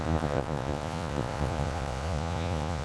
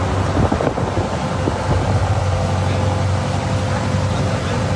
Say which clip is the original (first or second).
second